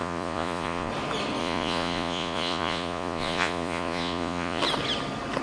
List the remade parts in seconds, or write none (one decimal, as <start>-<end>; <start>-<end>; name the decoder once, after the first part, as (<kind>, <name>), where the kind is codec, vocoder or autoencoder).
0.0-0.9 (vocoder, Vocos); 1.4-4.6